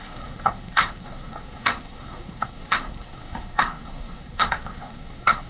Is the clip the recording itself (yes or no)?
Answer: no